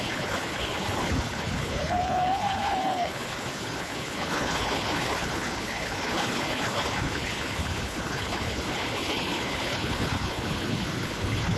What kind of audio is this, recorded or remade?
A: remade